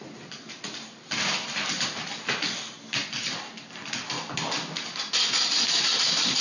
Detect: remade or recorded recorded